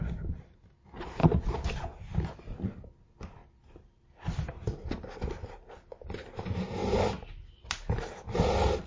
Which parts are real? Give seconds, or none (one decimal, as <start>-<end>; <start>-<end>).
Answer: 0.0-8.9